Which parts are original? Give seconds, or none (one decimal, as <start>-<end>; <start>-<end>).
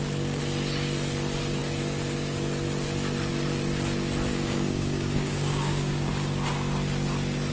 0.0-4.3; 6.1-7.5